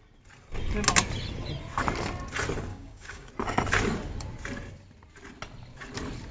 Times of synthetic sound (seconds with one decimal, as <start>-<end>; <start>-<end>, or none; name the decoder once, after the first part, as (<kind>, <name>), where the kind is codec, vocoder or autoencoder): 2.7-3.3 (codec, DAC)